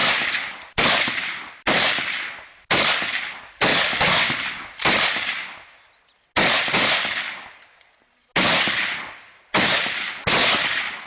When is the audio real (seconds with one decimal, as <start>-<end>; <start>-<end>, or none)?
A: 0.0-11.1

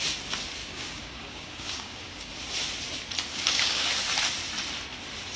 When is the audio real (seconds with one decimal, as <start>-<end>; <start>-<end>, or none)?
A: 0.0-0.6; 2.3-3.3; 3.9-5.4

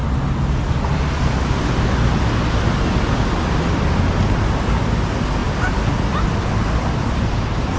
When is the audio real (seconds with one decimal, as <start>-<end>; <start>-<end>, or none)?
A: 0.0-7.8

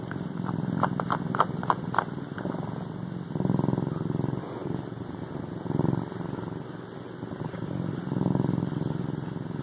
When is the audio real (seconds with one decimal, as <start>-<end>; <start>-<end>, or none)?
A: 0.0-9.6

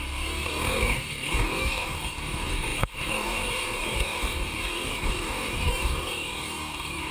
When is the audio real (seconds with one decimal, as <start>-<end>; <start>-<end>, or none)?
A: none

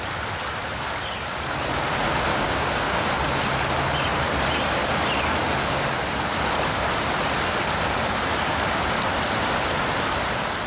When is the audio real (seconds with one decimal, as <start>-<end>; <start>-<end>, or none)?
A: 0.0-2.3; 3.1-10.7

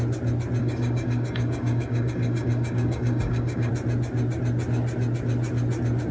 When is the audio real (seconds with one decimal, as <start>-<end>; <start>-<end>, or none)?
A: 0.0-0.6; 3.7-6.1